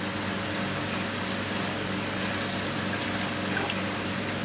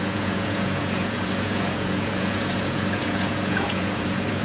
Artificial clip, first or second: second